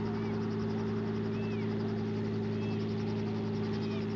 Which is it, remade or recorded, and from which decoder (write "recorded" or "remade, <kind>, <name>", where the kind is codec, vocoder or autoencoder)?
recorded